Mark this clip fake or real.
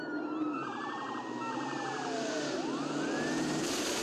fake